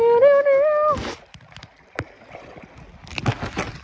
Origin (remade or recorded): recorded